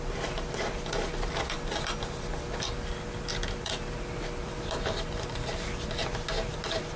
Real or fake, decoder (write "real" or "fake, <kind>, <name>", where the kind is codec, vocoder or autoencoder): real